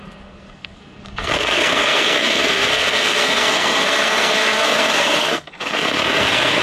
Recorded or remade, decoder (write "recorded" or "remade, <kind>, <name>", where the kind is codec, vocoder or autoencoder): remade, codec, SNAC